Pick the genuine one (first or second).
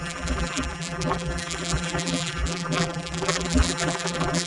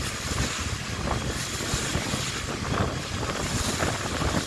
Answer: second